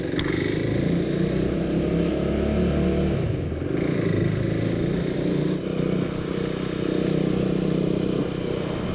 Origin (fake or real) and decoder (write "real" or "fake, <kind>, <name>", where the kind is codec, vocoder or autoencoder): real